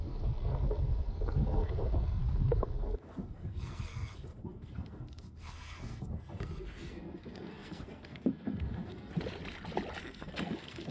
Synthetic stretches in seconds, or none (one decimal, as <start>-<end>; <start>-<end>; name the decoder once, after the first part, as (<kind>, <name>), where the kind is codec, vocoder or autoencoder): 0.0-9.1 (codec, SNAC); 10.0-10.9